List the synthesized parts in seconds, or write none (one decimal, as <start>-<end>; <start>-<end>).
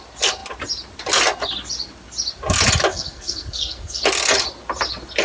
2.9-4.0